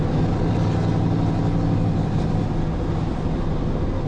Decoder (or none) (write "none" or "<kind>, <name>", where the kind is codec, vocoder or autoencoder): none